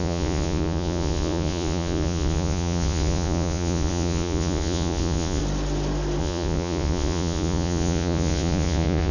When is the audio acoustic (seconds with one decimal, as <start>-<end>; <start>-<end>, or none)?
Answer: 5.4-6.2